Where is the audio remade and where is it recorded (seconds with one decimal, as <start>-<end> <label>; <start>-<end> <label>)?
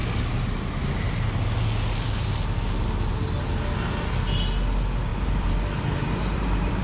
0.0-5.1 recorded; 5.1-6.8 remade